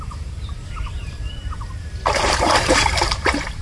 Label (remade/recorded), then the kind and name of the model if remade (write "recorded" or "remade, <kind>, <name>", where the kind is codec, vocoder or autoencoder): remade, vocoder, BigVGAN v2